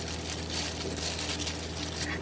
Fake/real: real